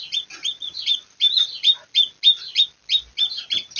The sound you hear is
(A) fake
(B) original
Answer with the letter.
B